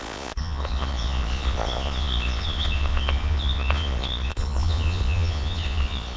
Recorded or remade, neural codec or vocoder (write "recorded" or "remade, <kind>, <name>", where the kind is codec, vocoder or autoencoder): remade, vocoder, Vocos